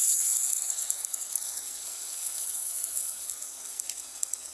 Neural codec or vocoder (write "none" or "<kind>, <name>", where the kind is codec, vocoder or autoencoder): codec, SNAC